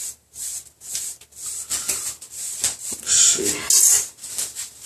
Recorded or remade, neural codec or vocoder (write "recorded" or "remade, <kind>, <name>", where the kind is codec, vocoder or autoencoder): recorded